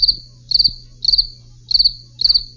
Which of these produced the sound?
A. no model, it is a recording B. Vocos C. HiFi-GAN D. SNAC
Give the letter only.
A